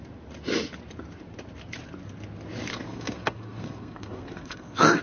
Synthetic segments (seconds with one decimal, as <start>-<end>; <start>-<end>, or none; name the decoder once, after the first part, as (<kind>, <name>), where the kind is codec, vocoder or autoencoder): 2.7-5.0 (codec, SNAC)